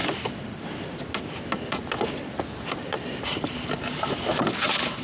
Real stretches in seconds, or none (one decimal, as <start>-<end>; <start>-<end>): 0.0-5.0